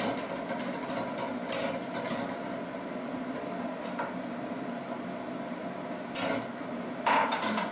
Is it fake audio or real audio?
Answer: real